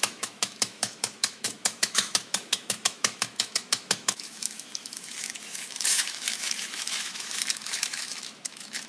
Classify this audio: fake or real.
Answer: fake